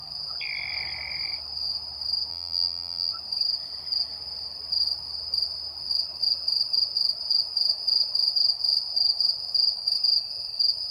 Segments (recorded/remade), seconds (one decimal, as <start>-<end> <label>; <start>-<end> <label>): 0.0-2.3 recorded; 2.3-3.1 remade; 3.1-10.9 recorded